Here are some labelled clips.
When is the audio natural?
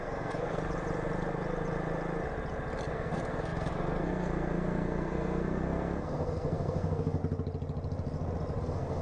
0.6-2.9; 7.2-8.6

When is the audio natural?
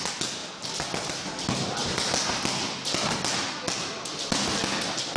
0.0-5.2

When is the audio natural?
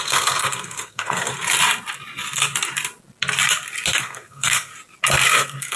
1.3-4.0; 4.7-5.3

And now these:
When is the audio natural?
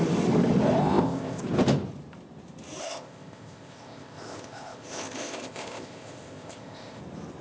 0.0-0.8; 1.4-2.8; 7.0-7.4